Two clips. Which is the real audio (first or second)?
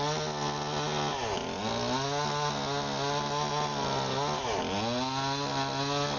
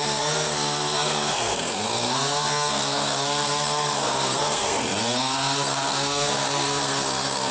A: first